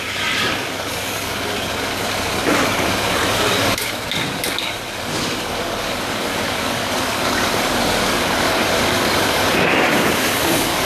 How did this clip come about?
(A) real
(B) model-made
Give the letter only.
B